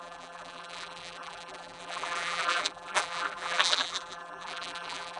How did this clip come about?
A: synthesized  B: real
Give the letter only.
A